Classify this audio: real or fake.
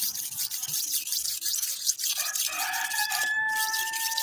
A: real